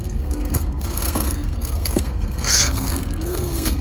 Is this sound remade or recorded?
remade